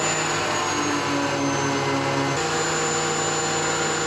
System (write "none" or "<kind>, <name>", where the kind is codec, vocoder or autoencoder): none